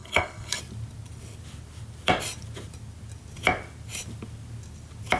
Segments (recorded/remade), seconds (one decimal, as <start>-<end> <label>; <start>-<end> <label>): 0.0-0.6 remade; 0.6-5.2 recorded